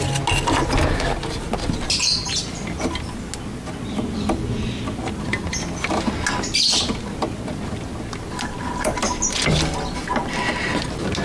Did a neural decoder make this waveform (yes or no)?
no